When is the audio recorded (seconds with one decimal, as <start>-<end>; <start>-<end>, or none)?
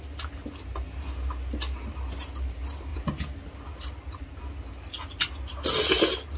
0.0-2.9; 4.2-6.4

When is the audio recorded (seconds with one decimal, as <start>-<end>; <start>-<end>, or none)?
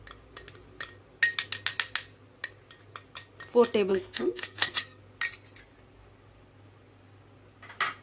0.0-3.9; 5.0-8.0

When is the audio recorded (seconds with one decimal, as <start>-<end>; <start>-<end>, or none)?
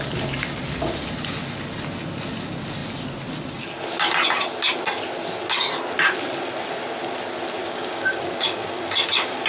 0.0-7.6; 8.8-9.5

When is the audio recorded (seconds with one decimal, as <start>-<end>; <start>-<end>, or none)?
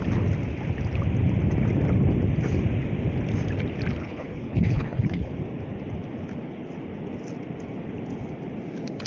0.0-4.0; 5.3-9.1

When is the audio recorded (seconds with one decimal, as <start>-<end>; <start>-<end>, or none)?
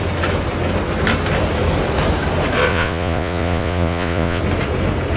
0.0-2.7; 4.4-5.2